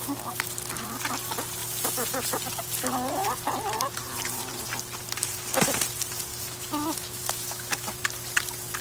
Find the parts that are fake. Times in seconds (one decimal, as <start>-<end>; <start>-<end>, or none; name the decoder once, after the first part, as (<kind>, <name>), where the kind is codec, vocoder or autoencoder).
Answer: 6.3-8.0 (autoencoder, DAC-VAE)